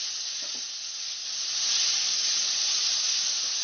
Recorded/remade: recorded